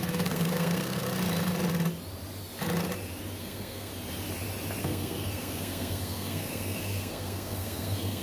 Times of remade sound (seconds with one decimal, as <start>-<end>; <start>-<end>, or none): 0.0-1.0; 3.4-3.9; 4.8-8.2